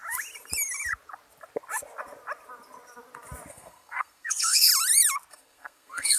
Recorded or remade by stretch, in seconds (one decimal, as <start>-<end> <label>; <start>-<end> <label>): 0.0-3.5 recorded; 3.5-4.7 remade; 4.7-5.3 recorded; 5.3-6.2 remade